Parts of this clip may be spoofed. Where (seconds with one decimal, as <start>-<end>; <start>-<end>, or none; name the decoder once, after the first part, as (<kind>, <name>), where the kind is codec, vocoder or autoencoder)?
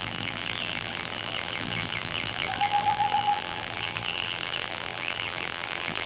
0.0-6.1 (vocoder, BigVGAN v2)